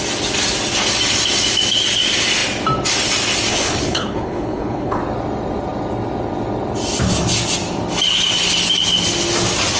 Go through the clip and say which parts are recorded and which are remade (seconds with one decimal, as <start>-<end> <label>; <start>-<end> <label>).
0.0-3.5 recorded; 3.5-5.0 remade; 5.0-9.8 recorded